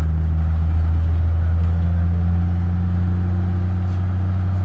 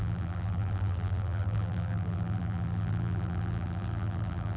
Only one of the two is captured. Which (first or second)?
first